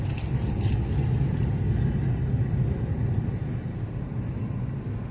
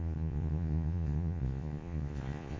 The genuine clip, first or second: first